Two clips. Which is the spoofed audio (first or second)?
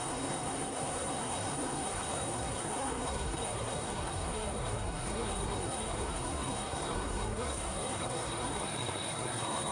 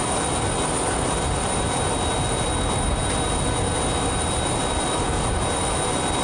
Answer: first